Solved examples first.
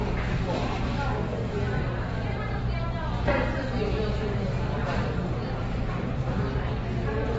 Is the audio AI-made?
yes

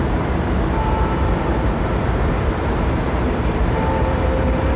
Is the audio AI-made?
yes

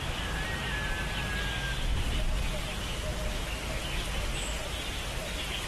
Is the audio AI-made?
no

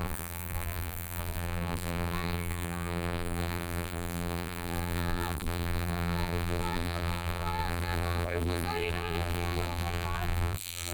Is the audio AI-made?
yes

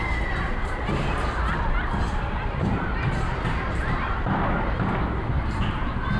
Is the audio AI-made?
yes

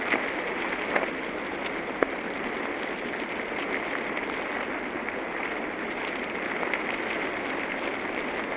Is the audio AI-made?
no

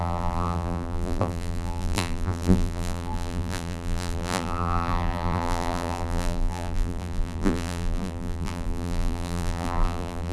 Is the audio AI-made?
yes